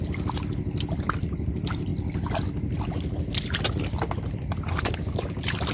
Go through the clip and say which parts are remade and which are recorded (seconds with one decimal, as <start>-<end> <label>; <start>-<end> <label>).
0.0-5.7 recorded